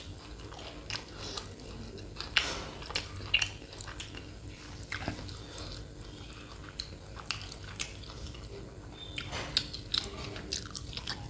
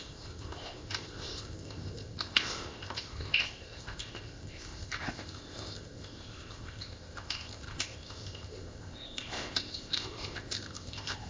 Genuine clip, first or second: first